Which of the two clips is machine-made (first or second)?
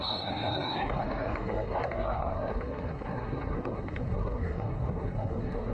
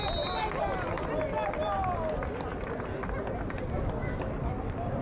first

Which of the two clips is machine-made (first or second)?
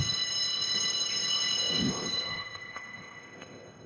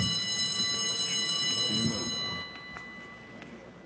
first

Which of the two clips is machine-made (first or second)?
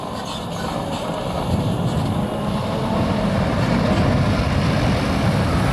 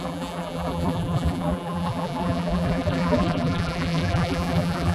second